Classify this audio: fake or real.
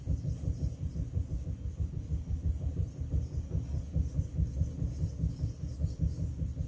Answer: real